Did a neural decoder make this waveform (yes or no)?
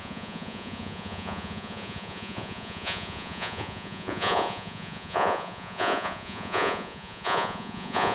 yes